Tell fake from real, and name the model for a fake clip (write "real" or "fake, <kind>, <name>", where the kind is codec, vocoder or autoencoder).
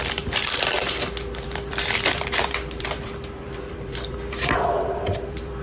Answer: fake, vocoder, BigVGAN v2